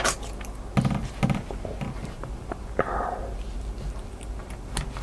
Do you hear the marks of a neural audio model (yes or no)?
no